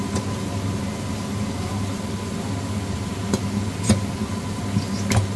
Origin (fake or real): real